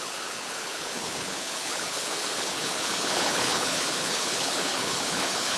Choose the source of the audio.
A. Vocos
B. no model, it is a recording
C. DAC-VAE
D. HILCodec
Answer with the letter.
D